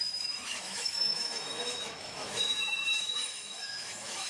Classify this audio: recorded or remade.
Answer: remade